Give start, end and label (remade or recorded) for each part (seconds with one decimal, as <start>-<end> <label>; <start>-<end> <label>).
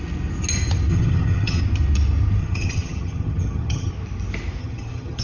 0.0-0.9 recorded; 0.9-1.6 remade; 1.6-2.4 recorded; 2.4-3.9 remade; 3.9-4.6 recorded; 4.6-5.2 remade